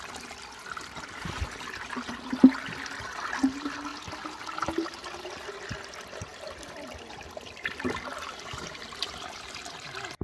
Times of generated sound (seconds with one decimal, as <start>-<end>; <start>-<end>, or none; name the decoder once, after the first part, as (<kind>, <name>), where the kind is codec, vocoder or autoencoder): none